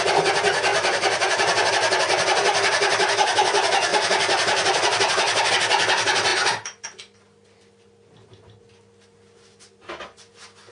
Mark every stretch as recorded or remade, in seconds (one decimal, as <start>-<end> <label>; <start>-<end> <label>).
0.0-0.7 recorded; 0.7-1.7 remade; 1.7-3.9 recorded; 3.9-5.5 remade; 5.5-10.7 recorded